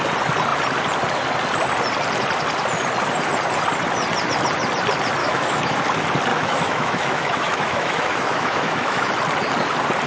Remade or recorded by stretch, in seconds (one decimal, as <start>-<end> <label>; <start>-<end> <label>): 0.0-5.2 recorded; 5.2-5.8 remade; 5.8-6.3 recorded; 6.3-9.1 remade; 9.1-10.1 recorded